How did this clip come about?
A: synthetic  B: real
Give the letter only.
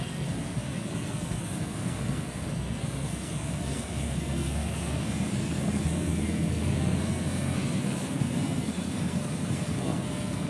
A